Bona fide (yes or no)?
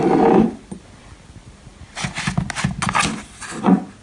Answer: yes